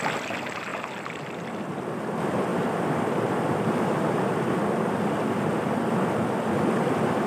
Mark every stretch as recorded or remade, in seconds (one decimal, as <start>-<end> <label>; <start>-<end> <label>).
0.0-7.3 recorded